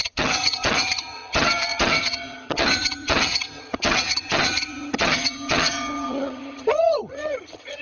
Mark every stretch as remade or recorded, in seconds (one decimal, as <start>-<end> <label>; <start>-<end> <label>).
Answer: 0.0-7.8 remade